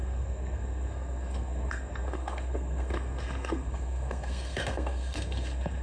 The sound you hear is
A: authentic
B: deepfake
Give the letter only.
B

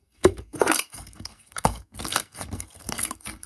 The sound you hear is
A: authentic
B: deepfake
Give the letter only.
B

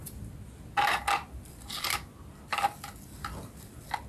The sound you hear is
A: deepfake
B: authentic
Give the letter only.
B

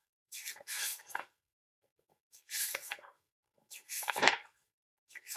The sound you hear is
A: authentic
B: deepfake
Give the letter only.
B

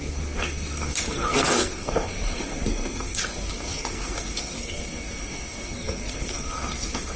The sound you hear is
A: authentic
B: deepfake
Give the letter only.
B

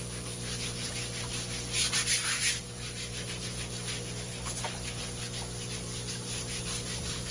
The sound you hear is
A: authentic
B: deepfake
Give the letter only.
A